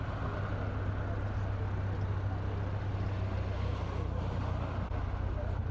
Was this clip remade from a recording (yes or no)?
no